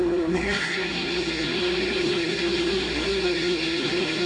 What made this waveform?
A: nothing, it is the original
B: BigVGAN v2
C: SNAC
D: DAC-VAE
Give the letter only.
C